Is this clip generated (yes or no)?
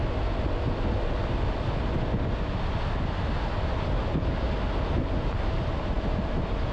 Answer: no